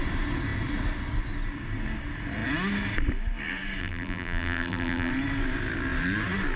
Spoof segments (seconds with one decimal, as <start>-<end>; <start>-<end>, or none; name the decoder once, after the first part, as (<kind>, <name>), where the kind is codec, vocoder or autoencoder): 3.8-5.1 (vocoder, BigVGAN v2)